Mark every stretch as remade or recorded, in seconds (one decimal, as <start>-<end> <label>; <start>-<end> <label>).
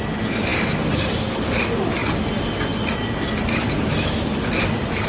0.0-5.1 recorded